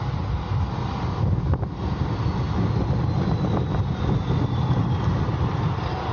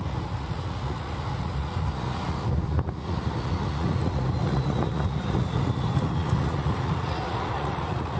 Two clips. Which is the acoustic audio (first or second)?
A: first